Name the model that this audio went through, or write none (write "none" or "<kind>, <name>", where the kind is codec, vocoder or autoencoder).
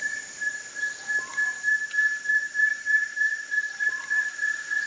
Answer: none